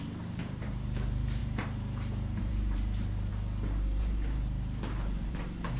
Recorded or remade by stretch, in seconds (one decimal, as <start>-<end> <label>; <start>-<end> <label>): 0.0-3.3 remade; 3.3-4.0 recorded; 4.0-5.8 remade